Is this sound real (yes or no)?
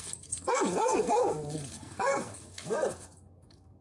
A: no